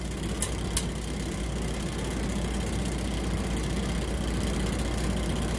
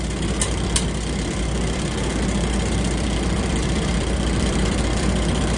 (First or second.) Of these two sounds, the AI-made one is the second